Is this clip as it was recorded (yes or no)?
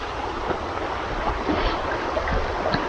yes